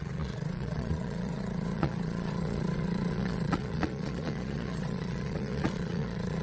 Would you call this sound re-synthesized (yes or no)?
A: yes